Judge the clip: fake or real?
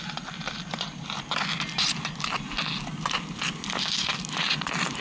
real